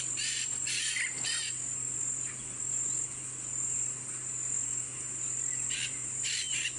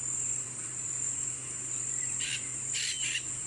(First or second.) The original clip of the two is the first